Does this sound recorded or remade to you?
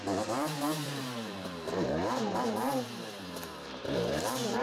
remade